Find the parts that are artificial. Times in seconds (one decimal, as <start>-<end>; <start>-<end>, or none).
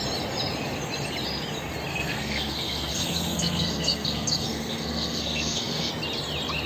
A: 1.9-5.9